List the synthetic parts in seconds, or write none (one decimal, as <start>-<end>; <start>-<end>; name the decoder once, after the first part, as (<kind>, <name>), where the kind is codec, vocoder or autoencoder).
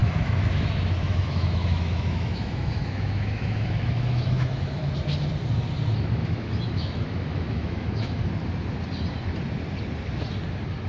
0.0-4.9 (autoencoder, DAC-VAE); 6.2-8.3